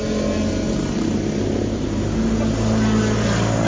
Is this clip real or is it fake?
real